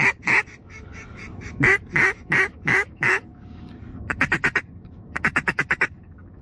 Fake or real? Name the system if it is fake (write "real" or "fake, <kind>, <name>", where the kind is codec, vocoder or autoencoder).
fake, codec, DAC